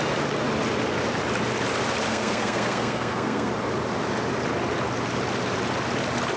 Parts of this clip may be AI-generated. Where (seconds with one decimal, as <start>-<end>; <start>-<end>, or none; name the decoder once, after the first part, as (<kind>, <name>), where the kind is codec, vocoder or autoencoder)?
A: 2.1-3.5 (codec, SNAC)